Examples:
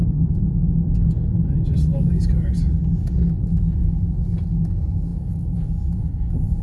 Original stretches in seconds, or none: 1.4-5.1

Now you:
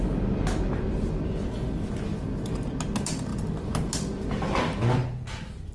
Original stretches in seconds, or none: 0.0-5.7

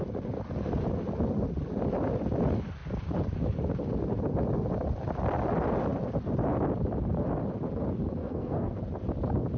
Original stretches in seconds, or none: 0.0-8.2; 8.8-9.6

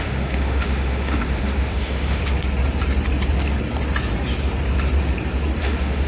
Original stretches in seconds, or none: 2.2-5.6

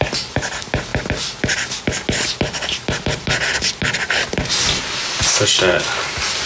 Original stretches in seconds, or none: 0.0-6.5

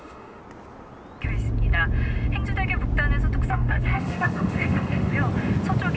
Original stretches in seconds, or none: 0.4-3.5; 5.1-6.0